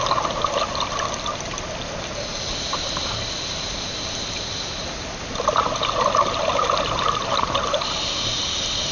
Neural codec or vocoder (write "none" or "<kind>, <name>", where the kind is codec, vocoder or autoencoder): none